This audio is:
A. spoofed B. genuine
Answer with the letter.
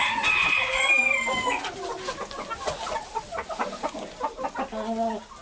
B